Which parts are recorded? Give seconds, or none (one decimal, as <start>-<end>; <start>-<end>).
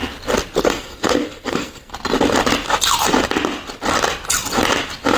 0.0-0.6; 1.9-5.2